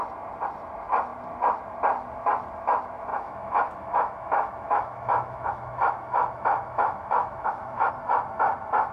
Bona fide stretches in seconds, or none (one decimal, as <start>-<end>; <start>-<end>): 0.0-3.1; 7.9-8.9